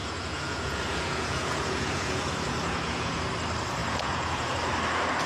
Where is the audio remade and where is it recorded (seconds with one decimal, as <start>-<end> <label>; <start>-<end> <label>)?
0.0-3.2 remade; 3.2-3.8 recorded; 3.8-4.5 remade; 4.5-5.3 recorded